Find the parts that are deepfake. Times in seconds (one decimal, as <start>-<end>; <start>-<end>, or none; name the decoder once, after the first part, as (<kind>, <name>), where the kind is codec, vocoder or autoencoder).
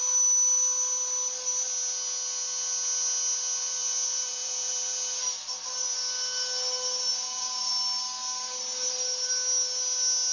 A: 3.8-4.7 (vocoder, Vocos); 7.1-7.7